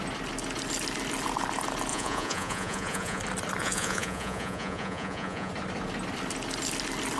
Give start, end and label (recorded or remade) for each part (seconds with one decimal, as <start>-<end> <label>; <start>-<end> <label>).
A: 0.0-1.9 recorded; 1.9-3.2 remade; 3.2-3.6 recorded; 3.6-5.5 remade; 5.5-7.2 recorded